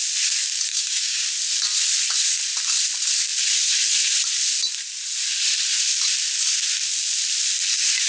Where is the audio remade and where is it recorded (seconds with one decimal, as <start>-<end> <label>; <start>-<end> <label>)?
0.0-0.7 recorded; 0.7-1.2 remade; 1.2-8.1 recorded